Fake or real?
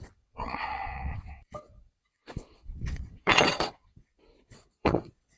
fake